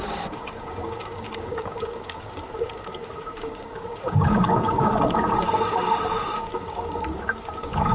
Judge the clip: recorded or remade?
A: remade